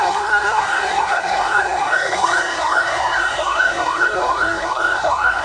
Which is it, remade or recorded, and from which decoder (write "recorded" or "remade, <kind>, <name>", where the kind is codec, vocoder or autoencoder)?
remade, codec, SNAC